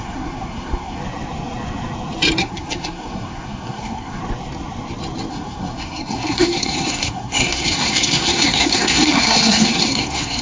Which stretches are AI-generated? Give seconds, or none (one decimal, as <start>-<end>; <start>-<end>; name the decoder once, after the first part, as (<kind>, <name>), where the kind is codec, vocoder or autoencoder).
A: 0.0-1.0 (codec, SNAC); 2.4-4.2; 5.3-10.4